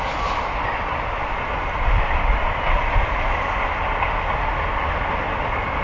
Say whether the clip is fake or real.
real